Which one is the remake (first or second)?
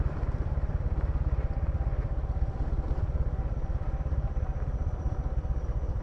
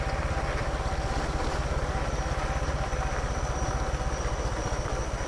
first